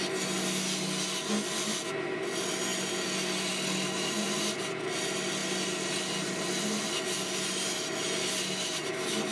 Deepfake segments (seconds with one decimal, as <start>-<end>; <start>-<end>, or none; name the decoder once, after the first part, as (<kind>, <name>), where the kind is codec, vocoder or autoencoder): none